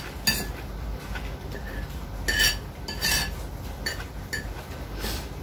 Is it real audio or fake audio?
real